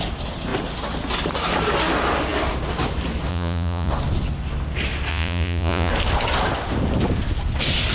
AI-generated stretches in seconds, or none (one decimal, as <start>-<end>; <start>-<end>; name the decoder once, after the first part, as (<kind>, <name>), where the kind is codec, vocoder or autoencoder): 3.3-3.9 (vocoder, Vocos); 5.1-5.9